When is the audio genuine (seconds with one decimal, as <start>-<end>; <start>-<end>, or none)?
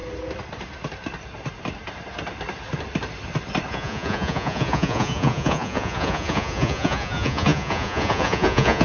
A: 0.0-3.7